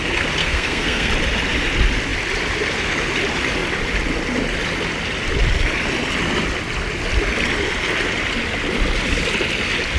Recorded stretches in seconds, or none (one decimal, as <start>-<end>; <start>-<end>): 0.0-0.4; 1.1-10.0